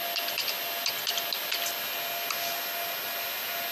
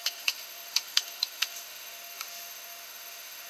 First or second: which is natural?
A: first